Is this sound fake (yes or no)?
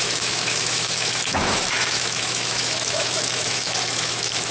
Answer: yes